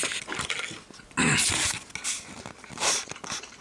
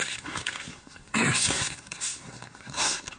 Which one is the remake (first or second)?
second